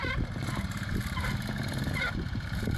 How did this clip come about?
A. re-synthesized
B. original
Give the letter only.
A